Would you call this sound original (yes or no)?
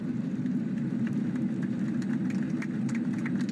yes